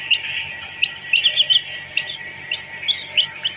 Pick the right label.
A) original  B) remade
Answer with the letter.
A